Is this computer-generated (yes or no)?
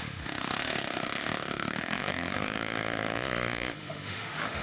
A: yes